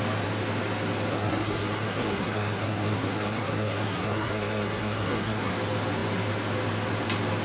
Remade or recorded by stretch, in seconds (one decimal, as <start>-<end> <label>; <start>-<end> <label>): 0.0-1.1 recorded; 1.1-5.5 remade; 5.5-7.4 recorded